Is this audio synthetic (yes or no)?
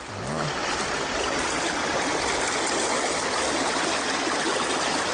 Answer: no